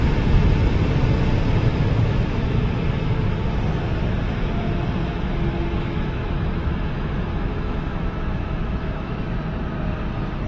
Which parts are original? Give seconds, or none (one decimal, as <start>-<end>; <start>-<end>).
0.0-1.7; 2.6-5.0; 9.2-10.5